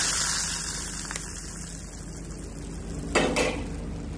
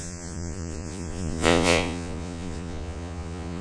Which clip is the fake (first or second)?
second